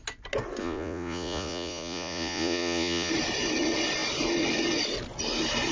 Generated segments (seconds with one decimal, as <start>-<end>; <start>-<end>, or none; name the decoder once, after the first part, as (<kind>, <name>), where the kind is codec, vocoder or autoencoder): 0.6-3.1 (vocoder, Vocos)